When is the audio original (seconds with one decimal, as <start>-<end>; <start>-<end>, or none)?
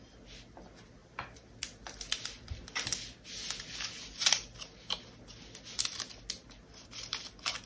0.0-1.0; 2.5-7.7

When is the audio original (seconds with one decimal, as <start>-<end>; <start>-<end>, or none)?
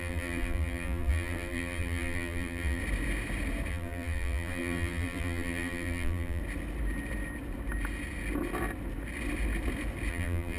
2.8-3.7; 6.4-10.1